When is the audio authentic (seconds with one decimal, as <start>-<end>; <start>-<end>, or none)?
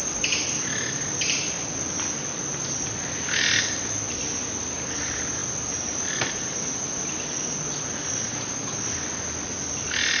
0.0-5.4; 7.0-10.2